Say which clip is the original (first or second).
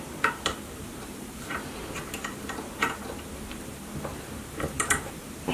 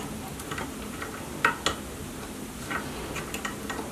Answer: second